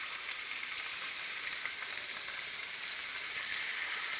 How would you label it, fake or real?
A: fake